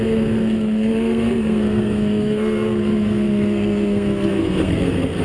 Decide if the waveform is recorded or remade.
remade